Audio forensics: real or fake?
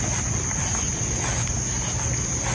real